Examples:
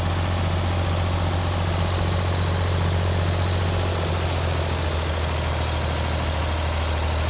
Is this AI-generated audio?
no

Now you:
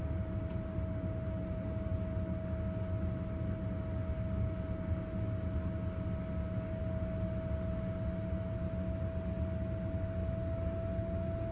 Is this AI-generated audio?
no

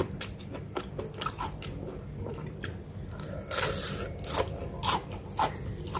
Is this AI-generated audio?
no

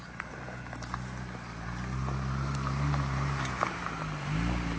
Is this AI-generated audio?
no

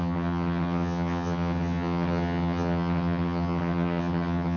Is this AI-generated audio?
yes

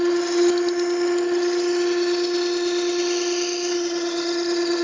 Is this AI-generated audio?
no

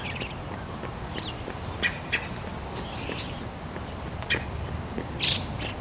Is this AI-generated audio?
no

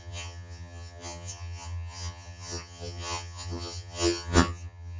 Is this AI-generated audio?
yes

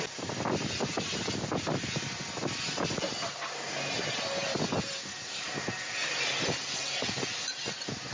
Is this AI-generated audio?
no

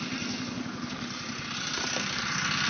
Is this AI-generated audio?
no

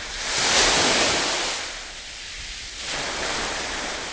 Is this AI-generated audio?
no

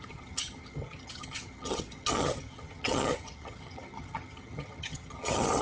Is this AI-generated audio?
yes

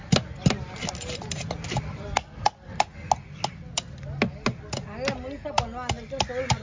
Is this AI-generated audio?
no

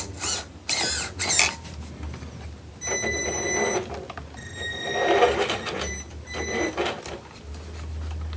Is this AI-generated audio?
no